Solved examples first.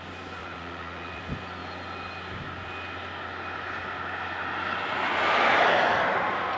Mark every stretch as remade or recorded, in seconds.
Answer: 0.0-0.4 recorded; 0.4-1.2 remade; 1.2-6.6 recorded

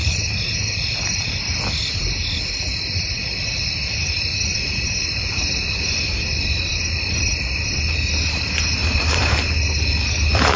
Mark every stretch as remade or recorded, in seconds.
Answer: 0.0-1.5 remade; 1.5-3.2 recorded; 3.2-7.8 remade; 7.8-8.8 recorded; 8.8-9.3 remade; 9.3-10.6 recorded

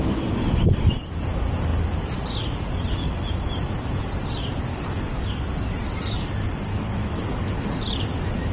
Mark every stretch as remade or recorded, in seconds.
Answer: 0.0-4.7 recorded; 4.7-5.2 remade; 5.2-6.7 recorded; 6.7-7.8 remade; 7.8-8.5 recorded

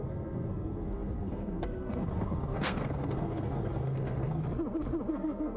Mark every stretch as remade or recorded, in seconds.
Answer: 0.0-4.4 remade; 4.4-5.1 recorded; 5.1-5.6 remade

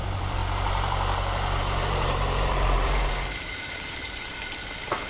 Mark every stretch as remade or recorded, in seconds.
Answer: 0.0-0.4 remade; 0.4-1.6 recorded; 1.6-5.1 remade